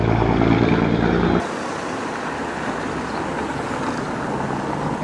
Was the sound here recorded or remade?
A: recorded